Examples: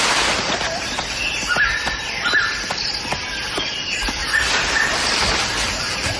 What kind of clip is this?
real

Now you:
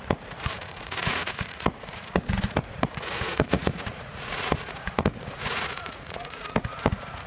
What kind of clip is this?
fake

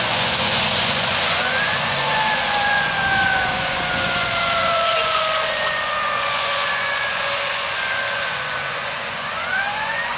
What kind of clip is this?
fake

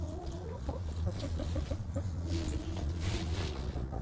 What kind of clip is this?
fake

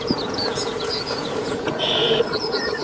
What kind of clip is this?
fake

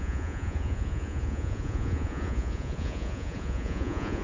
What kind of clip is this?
fake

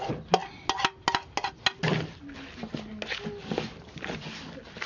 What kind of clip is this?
real